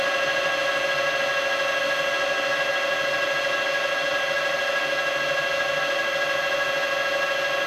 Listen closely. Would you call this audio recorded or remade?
recorded